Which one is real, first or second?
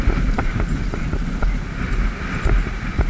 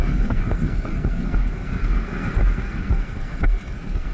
first